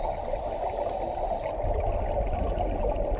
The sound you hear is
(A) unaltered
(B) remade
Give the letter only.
A